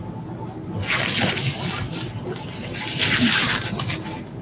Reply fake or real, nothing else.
real